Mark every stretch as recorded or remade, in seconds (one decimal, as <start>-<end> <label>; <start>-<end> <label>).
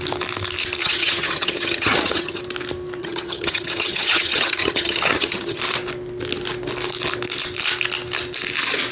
0.0-0.8 recorded; 0.8-2.4 remade; 2.4-3.0 recorded; 3.0-5.6 remade; 5.6-8.9 recorded